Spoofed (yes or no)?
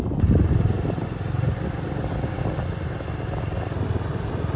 no